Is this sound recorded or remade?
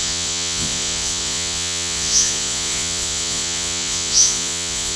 remade